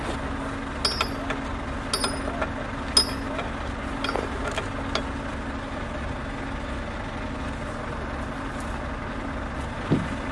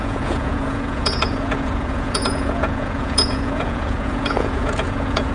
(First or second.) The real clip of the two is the first